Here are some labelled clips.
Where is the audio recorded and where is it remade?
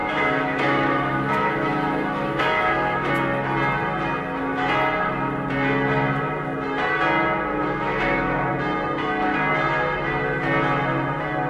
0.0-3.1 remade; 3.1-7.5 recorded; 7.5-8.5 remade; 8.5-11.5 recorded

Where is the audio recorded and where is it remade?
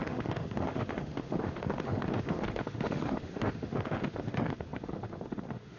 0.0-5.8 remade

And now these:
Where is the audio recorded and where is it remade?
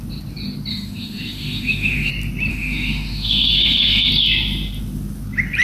0.0-0.7 recorded; 0.7-2.1 remade; 2.1-2.5 recorded; 2.5-4.1 remade; 4.1-5.6 recorded